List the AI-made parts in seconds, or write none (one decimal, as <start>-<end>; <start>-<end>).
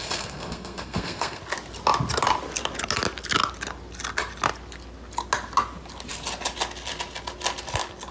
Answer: 0.0-1.4